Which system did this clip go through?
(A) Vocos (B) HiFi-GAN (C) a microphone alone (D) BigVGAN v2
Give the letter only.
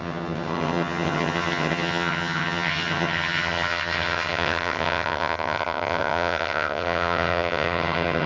B